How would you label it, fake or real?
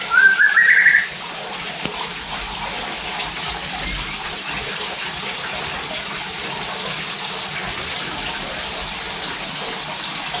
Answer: real